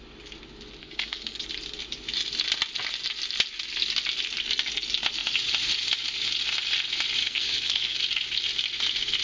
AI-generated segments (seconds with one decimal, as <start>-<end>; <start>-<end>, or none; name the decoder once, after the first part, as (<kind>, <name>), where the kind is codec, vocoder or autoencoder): 0.8-1.4 (codec, SNAC); 7.2-8.0